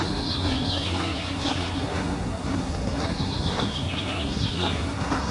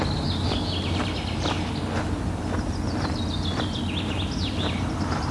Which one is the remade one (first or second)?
first